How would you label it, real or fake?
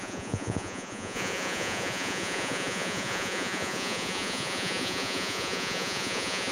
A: fake